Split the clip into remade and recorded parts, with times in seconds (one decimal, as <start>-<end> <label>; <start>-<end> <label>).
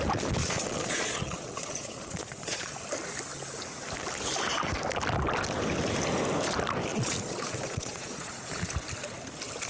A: 0.0-0.4 recorded; 0.4-2.7 remade; 2.7-6.9 recorded; 6.9-8.7 remade; 8.7-9.7 recorded